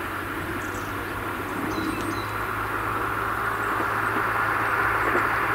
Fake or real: real